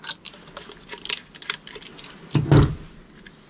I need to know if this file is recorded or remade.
recorded